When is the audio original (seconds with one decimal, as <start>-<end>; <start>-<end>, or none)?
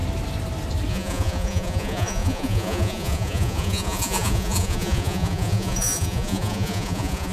0.0-0.9